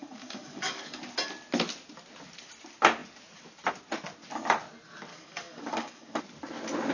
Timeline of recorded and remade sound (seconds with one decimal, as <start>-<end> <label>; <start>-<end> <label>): 0.0-1.0 remade; 1.0-5.1 recorded; 5.1-6.2 remade; 6.2-6.9 recorded